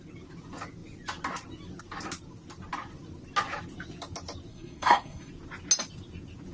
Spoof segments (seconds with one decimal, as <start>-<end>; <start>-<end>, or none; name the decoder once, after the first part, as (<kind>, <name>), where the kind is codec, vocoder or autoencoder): 4.5-5.3 (codec, SNAC)